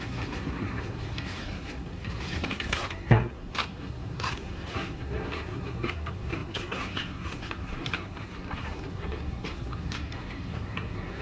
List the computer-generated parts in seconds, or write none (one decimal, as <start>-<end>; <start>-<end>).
0.0-11.2